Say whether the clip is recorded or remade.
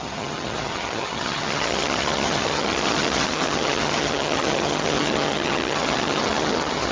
remade